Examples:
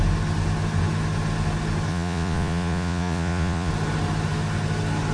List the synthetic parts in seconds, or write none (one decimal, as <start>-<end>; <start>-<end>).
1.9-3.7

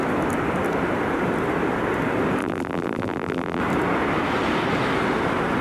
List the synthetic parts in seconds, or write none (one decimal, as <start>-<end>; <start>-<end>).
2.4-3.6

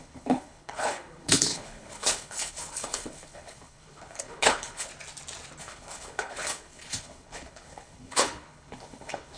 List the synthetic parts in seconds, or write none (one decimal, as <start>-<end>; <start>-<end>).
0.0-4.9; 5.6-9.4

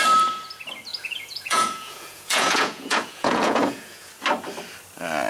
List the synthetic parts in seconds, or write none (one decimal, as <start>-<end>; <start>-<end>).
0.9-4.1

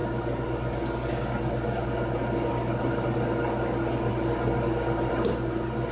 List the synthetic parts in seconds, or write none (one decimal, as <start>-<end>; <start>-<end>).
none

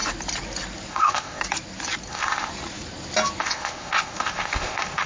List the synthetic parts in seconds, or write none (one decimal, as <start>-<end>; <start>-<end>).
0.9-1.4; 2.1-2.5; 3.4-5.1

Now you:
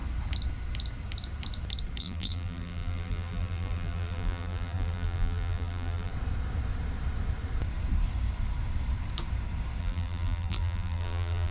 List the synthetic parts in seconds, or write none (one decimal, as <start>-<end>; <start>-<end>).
2.0-6.1; 9.8-11.5